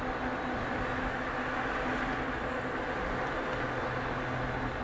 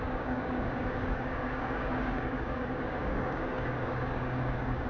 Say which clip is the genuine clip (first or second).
first